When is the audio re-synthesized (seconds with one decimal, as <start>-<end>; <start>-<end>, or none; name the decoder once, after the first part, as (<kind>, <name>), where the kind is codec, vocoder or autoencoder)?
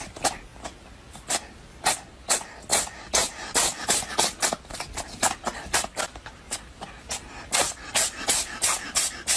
none